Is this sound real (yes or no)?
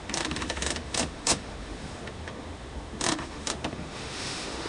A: no